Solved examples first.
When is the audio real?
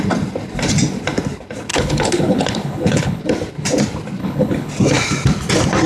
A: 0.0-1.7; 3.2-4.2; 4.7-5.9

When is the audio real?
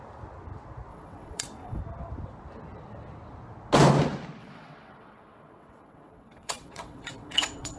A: 0.0-0.9; 1.8-4.4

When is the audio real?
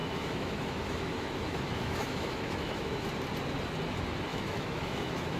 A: 3.1-4.3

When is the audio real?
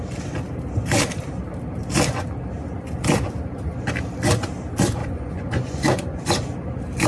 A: 0.0-5.0; 6.2-7.1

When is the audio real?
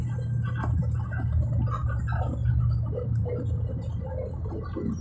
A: 0.0-5.0